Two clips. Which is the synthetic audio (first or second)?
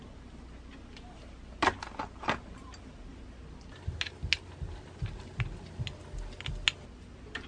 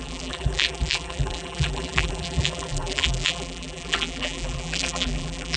second